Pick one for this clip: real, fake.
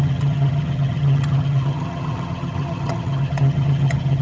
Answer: fake